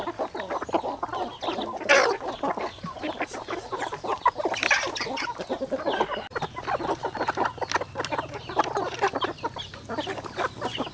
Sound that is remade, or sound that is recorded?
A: recorded